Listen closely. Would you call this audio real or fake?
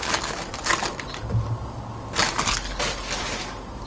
real